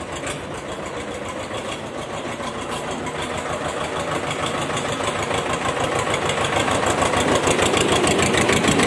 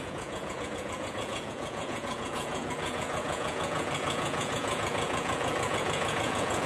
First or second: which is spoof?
second